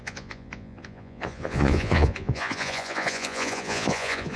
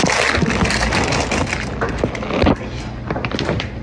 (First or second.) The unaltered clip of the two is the second